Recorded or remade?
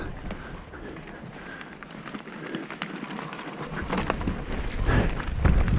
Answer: recorded